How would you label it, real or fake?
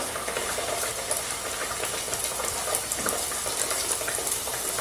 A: real